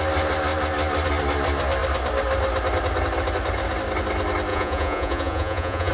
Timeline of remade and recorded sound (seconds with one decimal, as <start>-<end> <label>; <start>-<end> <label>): 0.0-4.5 recorded; 4.5-5.9 remade